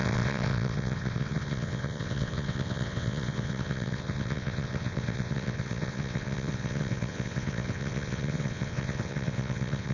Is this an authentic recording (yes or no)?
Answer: no